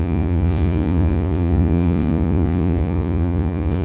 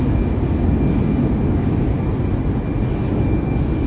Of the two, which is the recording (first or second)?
second